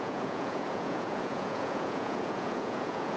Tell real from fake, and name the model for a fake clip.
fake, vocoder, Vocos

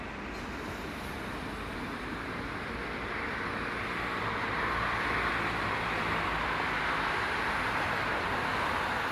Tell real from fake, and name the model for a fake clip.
real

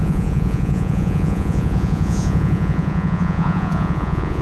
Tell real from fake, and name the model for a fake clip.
fake, vocoder, Vocos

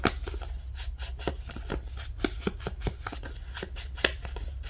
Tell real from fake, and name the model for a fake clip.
real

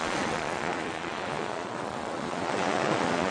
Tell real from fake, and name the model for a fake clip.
fake, vocoder, Vocos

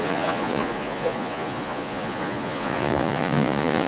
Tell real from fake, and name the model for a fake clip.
fake, vocoder, Vocos